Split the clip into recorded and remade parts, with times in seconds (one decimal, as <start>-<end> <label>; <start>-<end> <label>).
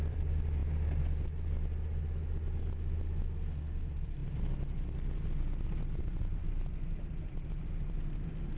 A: 0.0-0.6 remade; 0.6-3.8 recorded; 3.8-4.2 remade; 4.2-6.0 recorded; 6.0-8.6 remade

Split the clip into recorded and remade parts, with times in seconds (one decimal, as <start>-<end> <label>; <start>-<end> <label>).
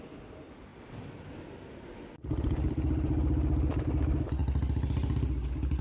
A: 0.0-5.8 recorded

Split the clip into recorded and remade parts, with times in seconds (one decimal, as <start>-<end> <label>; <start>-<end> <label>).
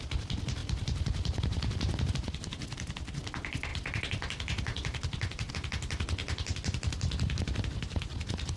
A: 0.0-0.6 recorded; 0.6-2.1 remade; 2.1-3.7 recorded; 3.7-5.5 remade; 5.5-6.2 recorded; 6.2-7.6 remade; 7.6-8.6 recorded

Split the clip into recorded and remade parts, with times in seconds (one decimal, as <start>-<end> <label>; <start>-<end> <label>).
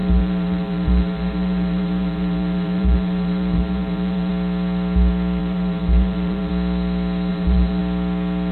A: 0.0-4.3 remade; 4.3-5.4 recorded; 5.4-6.5 remade; 6.5-7.3 recorded; 7.3-7.8 remade; 7.8-8.5 recorded